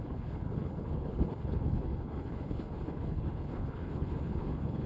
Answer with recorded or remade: remade